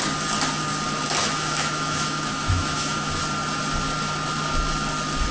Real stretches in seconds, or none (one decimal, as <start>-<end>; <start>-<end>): 0.0-1.2; 3.2-5.3